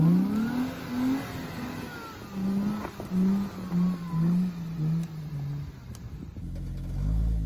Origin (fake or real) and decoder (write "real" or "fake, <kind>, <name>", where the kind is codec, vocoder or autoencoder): real